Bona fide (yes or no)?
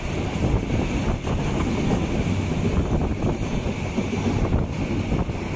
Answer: yes